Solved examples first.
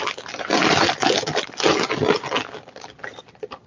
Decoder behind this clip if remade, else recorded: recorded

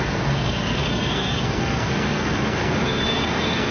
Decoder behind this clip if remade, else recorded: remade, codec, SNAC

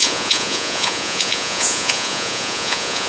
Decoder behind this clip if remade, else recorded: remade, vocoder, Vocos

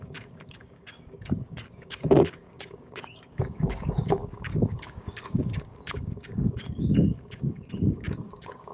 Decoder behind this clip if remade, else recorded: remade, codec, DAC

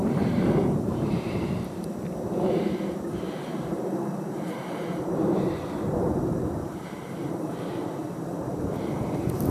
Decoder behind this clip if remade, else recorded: remade, vocoder, BigVGAN v2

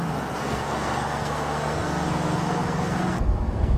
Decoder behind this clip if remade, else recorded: remade, codec, SNAC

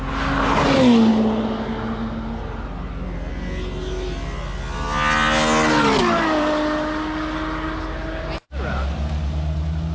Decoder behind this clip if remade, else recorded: recorded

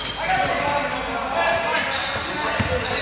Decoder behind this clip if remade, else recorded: recorded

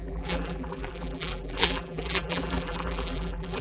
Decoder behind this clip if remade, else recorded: remade, vocoder, BigVGAN v2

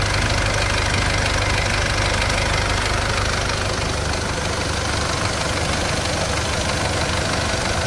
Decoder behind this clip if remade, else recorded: recorded